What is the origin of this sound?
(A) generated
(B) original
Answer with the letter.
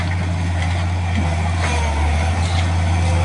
B